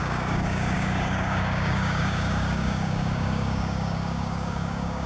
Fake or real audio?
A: fake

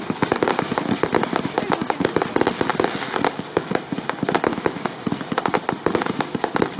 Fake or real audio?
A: real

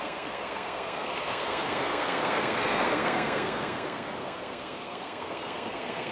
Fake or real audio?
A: fake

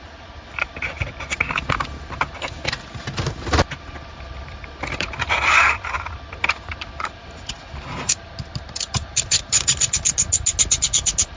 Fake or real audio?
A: real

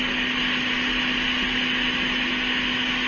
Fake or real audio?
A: real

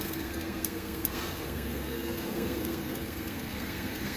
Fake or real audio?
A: fake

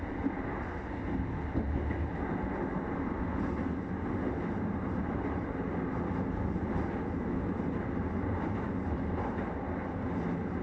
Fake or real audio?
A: real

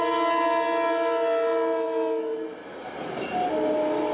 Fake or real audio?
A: real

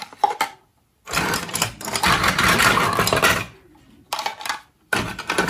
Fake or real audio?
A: fake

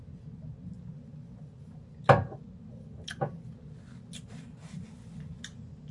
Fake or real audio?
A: real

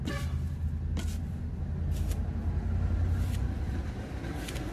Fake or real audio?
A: real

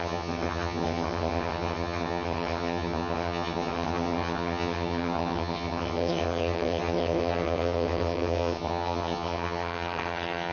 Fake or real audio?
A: fake